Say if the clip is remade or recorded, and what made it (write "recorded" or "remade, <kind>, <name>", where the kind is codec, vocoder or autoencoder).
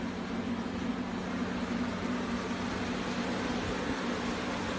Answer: recorded